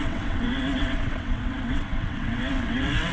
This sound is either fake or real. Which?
fake